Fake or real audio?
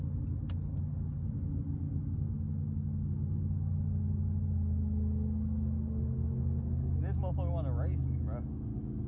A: real